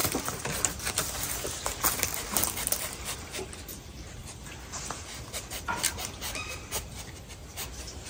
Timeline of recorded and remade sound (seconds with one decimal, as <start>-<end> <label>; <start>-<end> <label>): 0.0-8.1 recorded

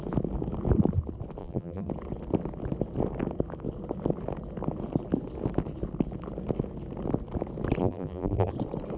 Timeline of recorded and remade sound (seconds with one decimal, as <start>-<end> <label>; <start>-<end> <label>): 0.0-1.4 recorded; 1.4-1.9 remade; 1.9-7.8 recorded; 7.8-8.5 remade; 8.5-9.0 recorded

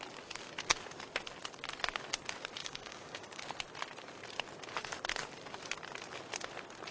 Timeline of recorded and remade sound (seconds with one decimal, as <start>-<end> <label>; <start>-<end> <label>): 0.0-2.6 recorded; 2.6-3.4 remade; 3.4-6.9 recorded

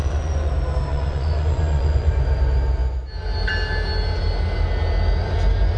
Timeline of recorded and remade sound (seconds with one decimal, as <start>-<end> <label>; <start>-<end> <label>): 0.0-0.5 remade; 0.5-0.9 recorded; 0.9-2.1 remade; 2.1-5.8 recorded